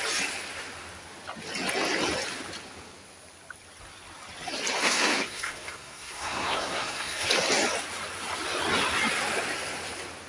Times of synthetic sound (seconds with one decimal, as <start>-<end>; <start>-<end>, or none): 4.8-7.3